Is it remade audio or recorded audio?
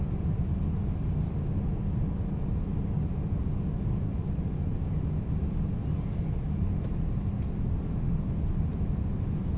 recorded